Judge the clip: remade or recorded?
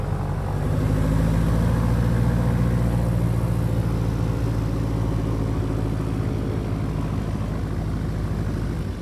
recorded